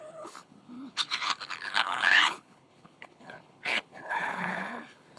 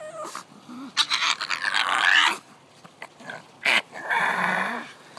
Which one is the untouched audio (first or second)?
second